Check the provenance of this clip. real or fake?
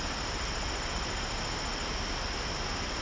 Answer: real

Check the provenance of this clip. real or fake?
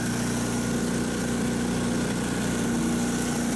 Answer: real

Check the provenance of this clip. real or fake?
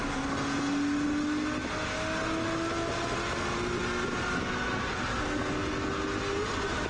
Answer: real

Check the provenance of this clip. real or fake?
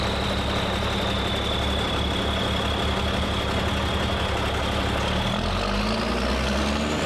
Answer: real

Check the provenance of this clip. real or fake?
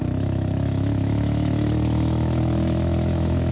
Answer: fake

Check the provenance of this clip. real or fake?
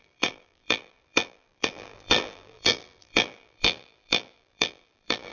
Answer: fake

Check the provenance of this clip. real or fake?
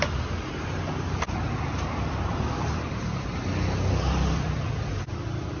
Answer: real